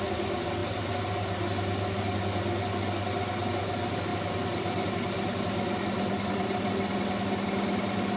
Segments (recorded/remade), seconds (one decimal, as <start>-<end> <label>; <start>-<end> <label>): 0.0-8.2 recorded